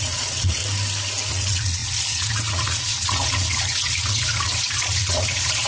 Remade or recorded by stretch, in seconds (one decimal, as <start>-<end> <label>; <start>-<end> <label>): 0.0-0.6 remade; 0.6-1.3 recorded; 1.3-5.7 remade